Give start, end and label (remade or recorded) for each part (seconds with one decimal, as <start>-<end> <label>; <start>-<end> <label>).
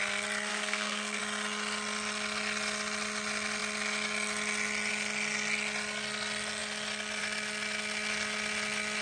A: 0.0-0.5 recorded; 0.5-1.2 remade; 1.2-9.0 recorded